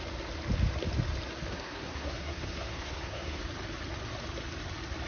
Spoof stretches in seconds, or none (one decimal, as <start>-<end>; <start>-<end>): 1.5-3.4